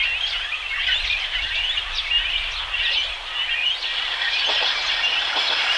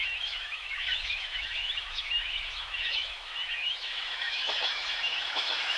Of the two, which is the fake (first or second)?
second